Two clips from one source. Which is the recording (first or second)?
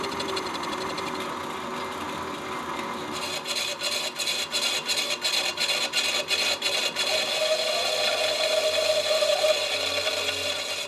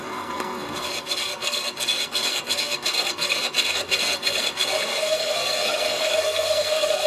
first